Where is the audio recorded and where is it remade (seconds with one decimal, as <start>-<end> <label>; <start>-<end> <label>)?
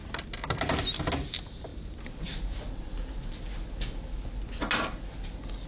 0.0-5.7 recorded